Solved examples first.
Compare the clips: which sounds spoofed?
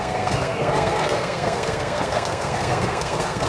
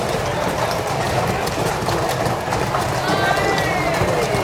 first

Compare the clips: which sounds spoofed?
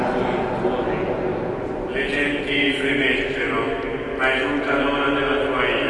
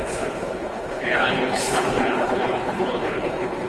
second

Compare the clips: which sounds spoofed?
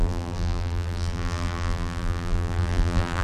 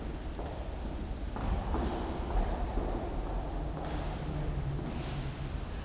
first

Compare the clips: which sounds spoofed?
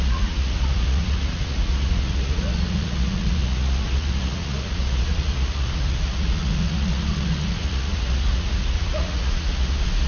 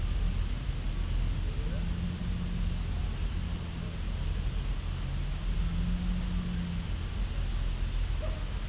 first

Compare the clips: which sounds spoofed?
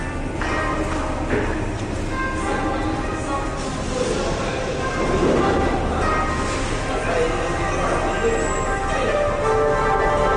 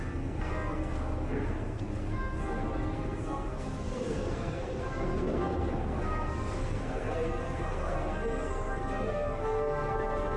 second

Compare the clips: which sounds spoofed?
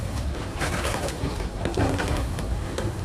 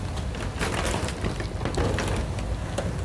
first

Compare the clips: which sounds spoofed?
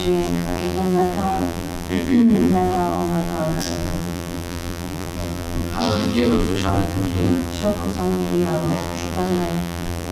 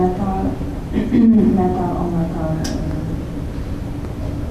first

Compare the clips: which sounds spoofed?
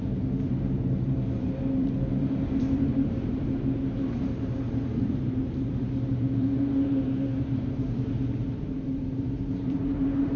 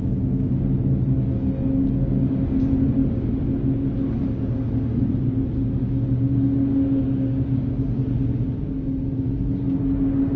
first